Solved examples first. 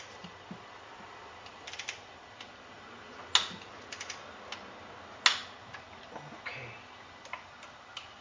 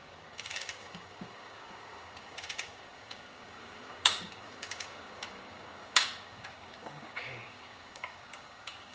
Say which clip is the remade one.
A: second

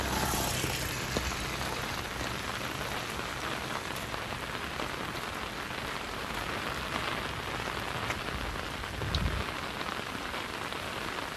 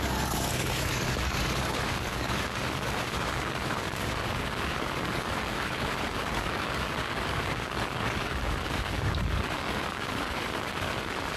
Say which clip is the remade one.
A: second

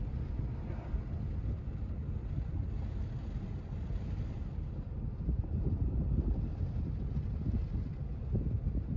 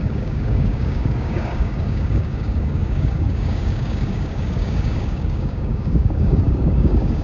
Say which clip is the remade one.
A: second